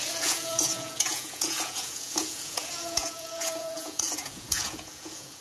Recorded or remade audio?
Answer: remade